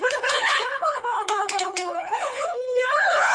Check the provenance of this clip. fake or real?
fake